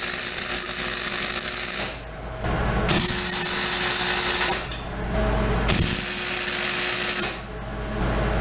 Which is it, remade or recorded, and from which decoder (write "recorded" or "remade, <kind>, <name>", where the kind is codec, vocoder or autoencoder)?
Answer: recorded